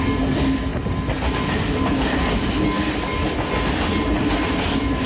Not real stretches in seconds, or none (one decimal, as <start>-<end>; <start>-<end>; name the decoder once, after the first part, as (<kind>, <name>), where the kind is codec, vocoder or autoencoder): none